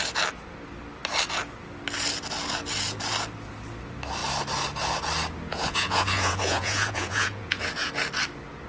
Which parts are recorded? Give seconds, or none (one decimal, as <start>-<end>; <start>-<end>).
0.0-5.5; 7.9-8.7